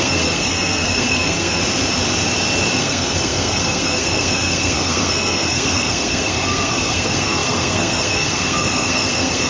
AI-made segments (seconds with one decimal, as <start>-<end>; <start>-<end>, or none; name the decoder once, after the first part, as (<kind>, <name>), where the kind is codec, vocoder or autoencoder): 0.0-1.6 (codec, SNAC); 2.8-9.5